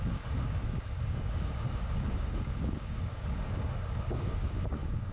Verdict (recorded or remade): remade